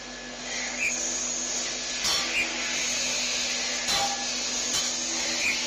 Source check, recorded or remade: recorded